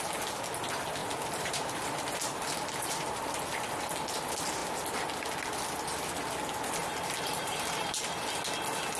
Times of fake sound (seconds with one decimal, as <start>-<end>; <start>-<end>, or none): 1.0-3.8; 6.8-8.0